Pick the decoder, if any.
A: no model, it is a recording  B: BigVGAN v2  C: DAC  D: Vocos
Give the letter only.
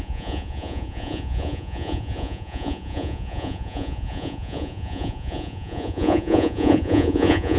D